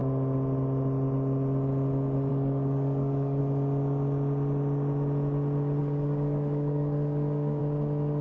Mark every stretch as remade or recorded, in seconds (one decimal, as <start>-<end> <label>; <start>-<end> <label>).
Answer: 0.0-2.3 recorded; 2.3-3.4 remade; 3.4-5.8 recorded; 5.8-7.6 remade; 7.6-8.2 recorded